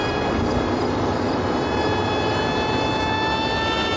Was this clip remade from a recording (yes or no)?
no